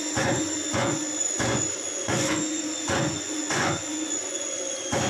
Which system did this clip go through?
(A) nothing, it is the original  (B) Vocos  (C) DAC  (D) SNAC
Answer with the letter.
B